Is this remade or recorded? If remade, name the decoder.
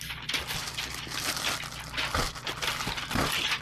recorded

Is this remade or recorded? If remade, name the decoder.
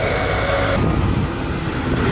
recorded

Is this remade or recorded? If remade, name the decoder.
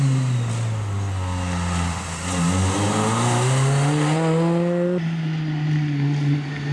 recorded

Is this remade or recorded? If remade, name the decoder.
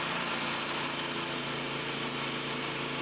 recorded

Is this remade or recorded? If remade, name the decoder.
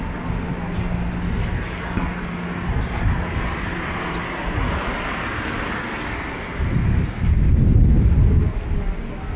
recorded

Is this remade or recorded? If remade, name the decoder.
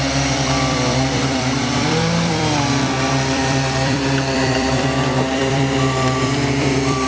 remade, vocoder, BigVGAN v2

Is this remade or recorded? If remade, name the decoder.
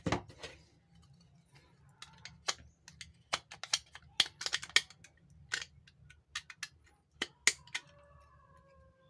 recorded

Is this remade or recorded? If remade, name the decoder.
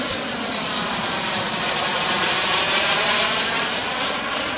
remade, vocoder, BigVGAN v2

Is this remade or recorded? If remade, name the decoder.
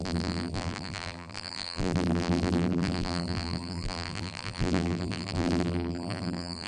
remade, vocoder, BigVGAN v2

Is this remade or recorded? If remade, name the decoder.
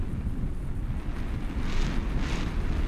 recorded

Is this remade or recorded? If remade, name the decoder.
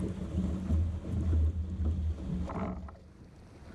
recorded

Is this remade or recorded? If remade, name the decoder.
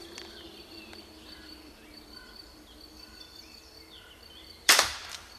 remade, vocoder, BigVGAN v2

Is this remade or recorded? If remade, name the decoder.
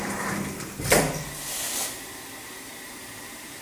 remade, vocoder, BigVGAN v2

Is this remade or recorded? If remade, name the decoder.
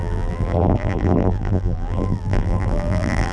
remade, vocoder, BigVGAN v2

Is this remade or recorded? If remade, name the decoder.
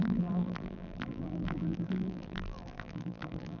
remade, vocoder, BigVGAN v2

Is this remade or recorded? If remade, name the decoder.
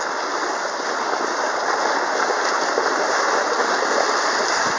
recorded